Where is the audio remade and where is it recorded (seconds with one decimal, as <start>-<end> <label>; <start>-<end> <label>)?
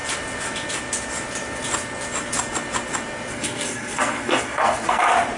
0.0-3.3 recorded; 3.3-5.0 remade; 5.0-5.4 recorded